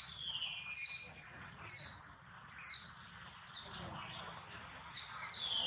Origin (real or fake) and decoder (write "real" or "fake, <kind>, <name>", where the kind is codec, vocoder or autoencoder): real